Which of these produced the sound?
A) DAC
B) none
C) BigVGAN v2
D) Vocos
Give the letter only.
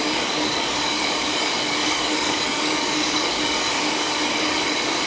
A